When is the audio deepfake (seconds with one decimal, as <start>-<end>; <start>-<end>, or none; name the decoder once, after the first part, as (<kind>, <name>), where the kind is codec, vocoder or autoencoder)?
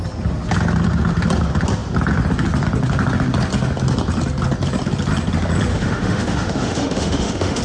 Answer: 5.7-7.6 (autoencoder, DAC-VAE)